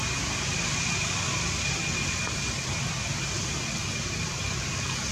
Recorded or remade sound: recorded